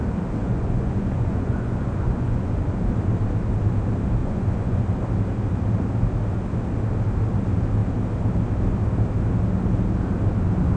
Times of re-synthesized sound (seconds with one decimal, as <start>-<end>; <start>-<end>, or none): 0.4-2.5; 4.2-4.8